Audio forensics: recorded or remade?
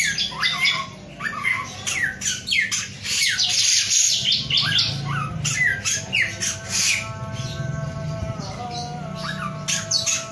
recorded